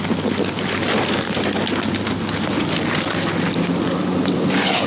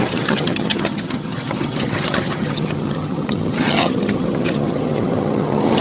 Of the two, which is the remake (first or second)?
second